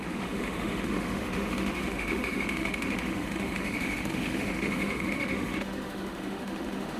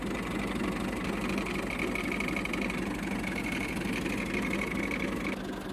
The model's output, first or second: first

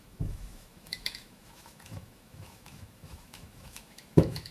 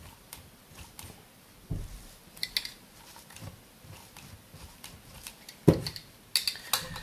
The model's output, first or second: first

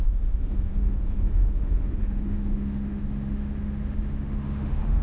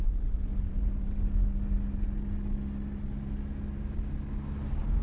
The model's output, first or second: first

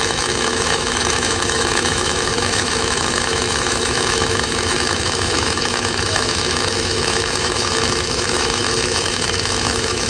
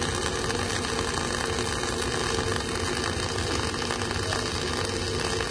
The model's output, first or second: first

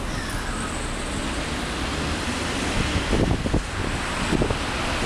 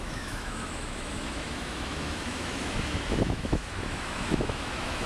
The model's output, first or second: second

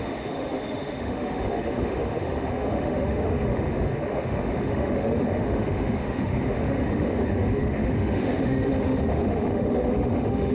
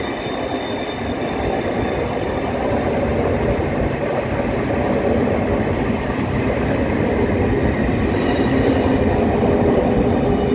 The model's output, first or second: first